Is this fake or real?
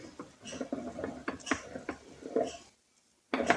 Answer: real